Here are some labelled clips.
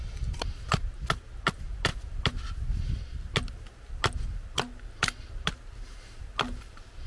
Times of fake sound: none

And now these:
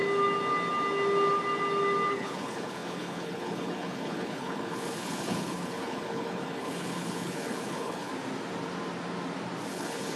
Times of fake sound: 2.1-8.1; 9.7-10.2

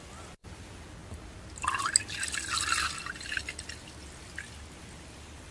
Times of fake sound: none

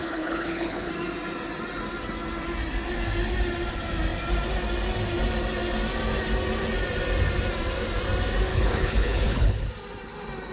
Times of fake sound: 0.0-0.9; 8.5-9.7

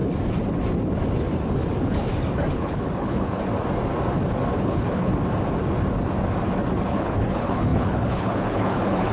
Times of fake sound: 2.5-3.4; 4.6-5.1; 6.9-9.1